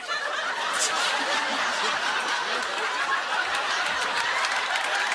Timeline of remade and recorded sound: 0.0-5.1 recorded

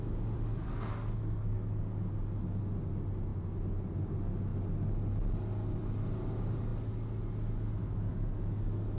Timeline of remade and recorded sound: 0.0-0.5 recorded; 0.5-1.8 remade; 1.8-9.0 recorded

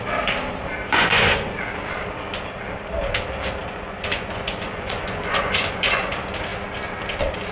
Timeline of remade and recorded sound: 0.0-0.8 recorded; 0.8-1.5 remade; 1.5-3.6 recorded; 3.6-6.1 remade; 6.1-7.5 recorded

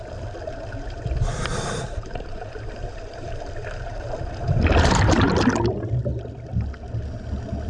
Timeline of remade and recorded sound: 0.0-1.5 recorded; 1.5-5.3 remade; 5.3-7.7 recorded

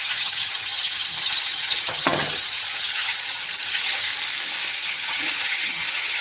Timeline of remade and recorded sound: 0.0-4.1 remade; 4.1-4.7 recorded; 4.7-6.2 remade

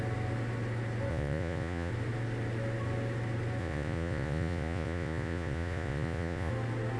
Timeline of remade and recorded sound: 0.0-1.1 recorded; 1.1-1.9 remade; 1.9-3.6 recorded; 3.6-6.5 remade; 6.5-7.0 recorded

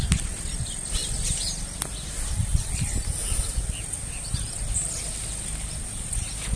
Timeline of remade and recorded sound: 0.0-6.6 recorded